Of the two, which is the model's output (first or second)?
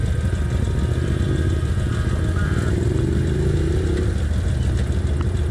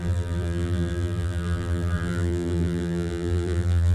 second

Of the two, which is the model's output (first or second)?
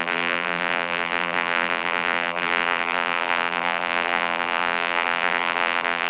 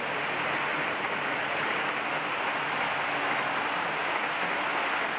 first